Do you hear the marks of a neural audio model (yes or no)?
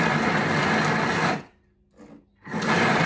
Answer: no